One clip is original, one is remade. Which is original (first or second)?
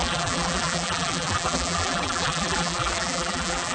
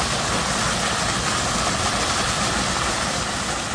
second